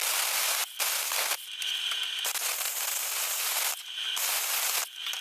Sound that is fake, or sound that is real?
real